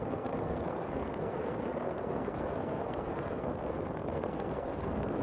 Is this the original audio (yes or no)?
no